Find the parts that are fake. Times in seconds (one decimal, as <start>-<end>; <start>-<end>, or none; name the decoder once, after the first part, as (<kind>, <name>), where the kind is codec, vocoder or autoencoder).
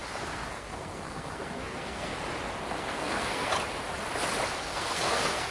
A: 0.0-2.1 (codec, SNAC); 2.7-3.5; 4.6-5.5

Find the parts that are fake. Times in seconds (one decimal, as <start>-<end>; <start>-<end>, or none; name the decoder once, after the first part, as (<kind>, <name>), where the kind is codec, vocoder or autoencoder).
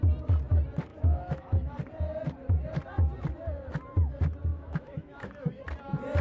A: 0.9-1.8 (autoencoder, DAC-VAE); 4.5-5.6